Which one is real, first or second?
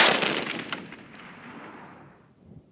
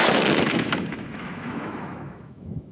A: first